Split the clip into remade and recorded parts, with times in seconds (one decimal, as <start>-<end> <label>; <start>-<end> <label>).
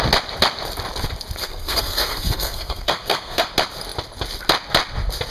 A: 0.0-1.4 recorded; 1.4-3.5 remade; 3.5-5.3 recorded